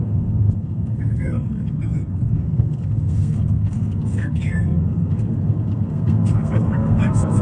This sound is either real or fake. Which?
fake